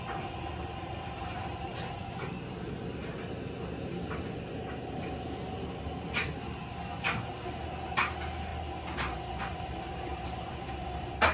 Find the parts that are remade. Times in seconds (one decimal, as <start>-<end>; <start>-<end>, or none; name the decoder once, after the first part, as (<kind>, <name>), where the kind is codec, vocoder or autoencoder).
0.6-1.7 (vocoder, BigVGAN v2)